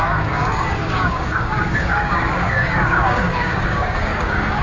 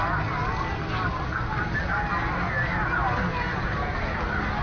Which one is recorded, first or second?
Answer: second